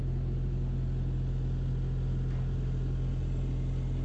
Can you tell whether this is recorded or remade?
recorded